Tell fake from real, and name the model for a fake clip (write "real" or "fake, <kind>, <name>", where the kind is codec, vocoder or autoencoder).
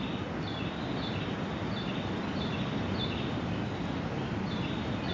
real